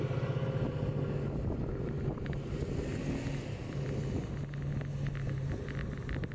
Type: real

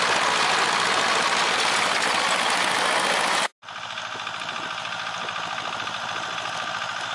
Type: real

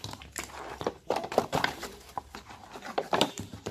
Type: fake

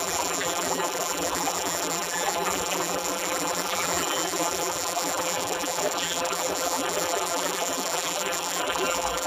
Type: fake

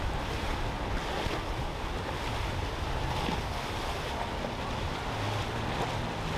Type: real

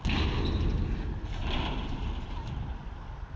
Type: real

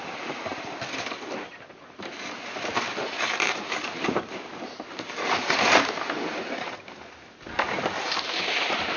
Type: fake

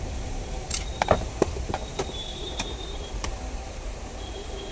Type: fake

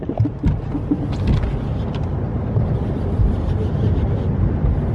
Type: real